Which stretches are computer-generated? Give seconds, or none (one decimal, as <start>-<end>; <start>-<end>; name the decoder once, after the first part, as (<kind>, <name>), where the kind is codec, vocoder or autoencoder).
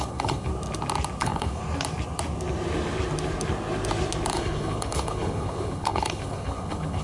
0.0-0.5 (codec, HILCodec); 1.2-1.6; 4.3-7.0